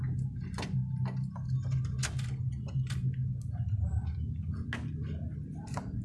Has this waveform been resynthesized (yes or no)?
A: no